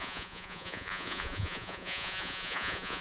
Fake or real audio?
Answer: fake